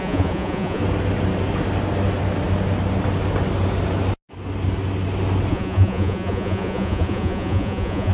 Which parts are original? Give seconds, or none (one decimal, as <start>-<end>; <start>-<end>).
0.8-5.5